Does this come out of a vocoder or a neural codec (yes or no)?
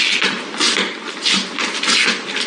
no